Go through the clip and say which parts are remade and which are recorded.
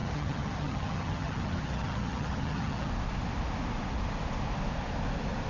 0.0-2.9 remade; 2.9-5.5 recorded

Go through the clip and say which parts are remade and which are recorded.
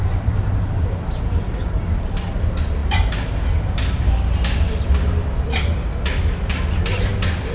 0.0-7.5 recorded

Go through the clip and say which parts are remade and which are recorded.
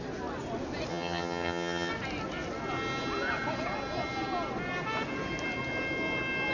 0.0-0.9 recorded; 0.9-1.9 remade; 1.9-6.5 recorded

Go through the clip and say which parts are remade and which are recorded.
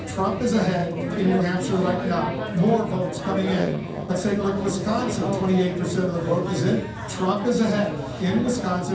0.0-3.6 recorded; 3.6-4.1 remade; 4.1-8.9 recorded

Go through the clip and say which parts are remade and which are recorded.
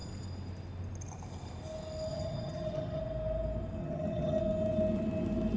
0.0-2.1 recorded; 2.1-3.0 remade; 3.0-3.8 recorded; 3.8-4.4 remade; 4.4-5.6 recorded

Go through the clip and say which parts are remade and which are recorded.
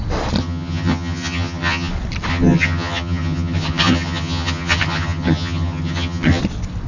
0.0-0.4 recorded; 0.4-1.9 remade; 1.9-2.3 recorded; 2.3-6.4 remade; 6.4-6.9 recorded